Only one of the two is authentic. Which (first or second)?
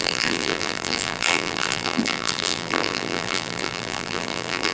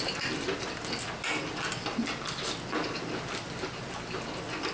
second